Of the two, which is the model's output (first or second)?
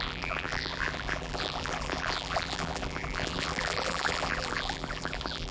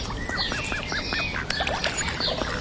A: first